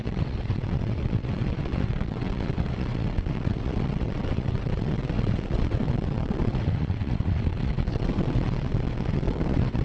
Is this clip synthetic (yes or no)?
yes